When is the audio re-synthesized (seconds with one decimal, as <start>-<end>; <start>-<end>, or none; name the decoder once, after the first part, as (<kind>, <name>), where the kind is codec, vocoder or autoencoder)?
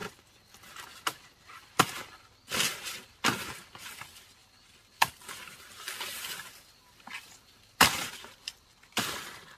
1.3-9.6 (vocoder, BigVGAN v2)